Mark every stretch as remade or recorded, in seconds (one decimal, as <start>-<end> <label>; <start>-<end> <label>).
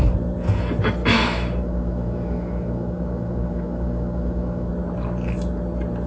0.0-1.0 recorded; 1.0-4.7 remade; 4.7-6.1 recorded